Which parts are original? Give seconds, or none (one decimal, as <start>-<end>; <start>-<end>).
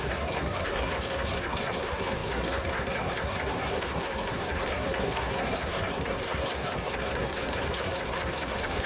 none